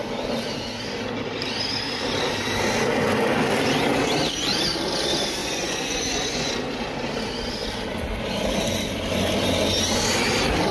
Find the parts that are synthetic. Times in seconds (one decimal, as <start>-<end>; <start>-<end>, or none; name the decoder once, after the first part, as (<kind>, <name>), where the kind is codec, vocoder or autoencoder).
5.4-6.5 (vocoder, Vocos)

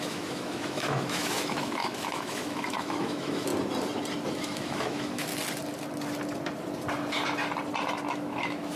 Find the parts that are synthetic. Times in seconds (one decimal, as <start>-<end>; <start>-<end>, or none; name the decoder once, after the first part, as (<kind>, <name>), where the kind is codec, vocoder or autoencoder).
0.0-3.5 (autoencoder, DAC-VAE); 4.3-5.3; 8.1-8.8

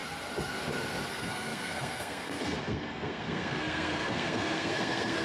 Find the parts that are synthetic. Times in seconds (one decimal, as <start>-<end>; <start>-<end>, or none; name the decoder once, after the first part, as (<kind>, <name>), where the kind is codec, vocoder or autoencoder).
1.1-5.2 (codec, SNAC)

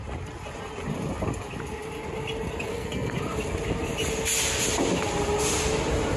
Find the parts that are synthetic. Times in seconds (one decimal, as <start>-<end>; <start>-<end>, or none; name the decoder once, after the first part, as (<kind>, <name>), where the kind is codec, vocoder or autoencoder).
2.7-3.2 (codec, SNAC)

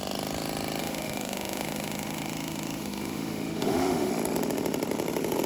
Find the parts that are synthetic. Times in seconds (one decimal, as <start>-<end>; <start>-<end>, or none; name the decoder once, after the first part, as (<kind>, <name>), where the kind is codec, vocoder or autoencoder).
0.8-4.1 (autoencoder, DAC-VAE)

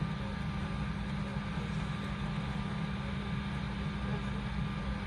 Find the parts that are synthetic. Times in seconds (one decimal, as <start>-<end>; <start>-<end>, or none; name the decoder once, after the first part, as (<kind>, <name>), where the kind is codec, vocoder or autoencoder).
none